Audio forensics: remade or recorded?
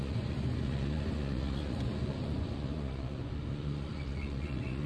remade